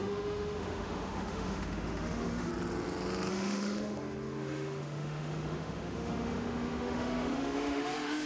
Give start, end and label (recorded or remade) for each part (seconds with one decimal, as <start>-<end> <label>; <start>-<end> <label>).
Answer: 0.0-2.5 remade; 2.5-3.3 recorded; 3.3-8.3 remade